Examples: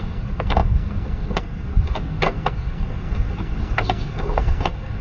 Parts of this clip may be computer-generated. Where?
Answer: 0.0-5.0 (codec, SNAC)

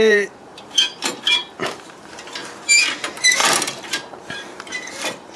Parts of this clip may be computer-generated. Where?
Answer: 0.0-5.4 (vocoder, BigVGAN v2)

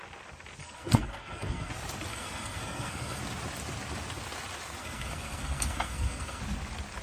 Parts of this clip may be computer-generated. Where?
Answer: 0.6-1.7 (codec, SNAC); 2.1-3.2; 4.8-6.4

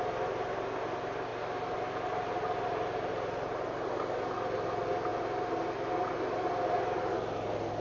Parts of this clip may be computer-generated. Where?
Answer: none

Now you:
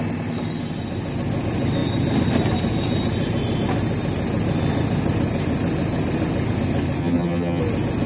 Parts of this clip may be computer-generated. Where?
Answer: 7.0-7.6 (vocoder, HiFi-GAN)

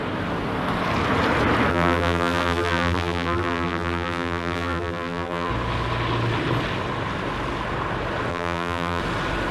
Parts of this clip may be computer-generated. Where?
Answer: 1.7-5.5 (vocoder, BigVGAN v2); 8.3-9.0

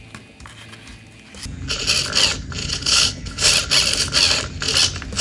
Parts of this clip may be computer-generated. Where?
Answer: 2.6-3.5 (codec, HILCodec)

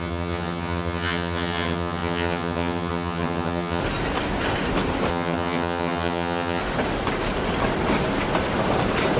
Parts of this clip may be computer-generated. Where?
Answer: 0.0-3.8 (vocoder, HiFi-GAN); 5.1-6.6